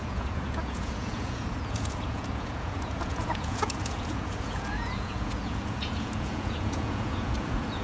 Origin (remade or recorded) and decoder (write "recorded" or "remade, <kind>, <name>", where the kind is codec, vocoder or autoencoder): remade, vocoder, Vocos